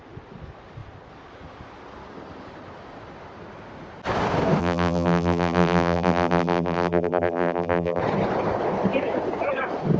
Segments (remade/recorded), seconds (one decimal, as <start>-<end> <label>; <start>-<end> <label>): 0.0-4.6 recorded; 4.6-8.0 remade; 8.0-10.0 recorded